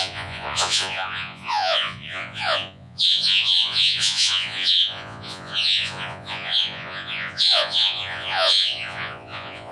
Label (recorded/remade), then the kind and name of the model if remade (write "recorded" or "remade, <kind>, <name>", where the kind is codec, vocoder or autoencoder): remade, vocoder, Vocos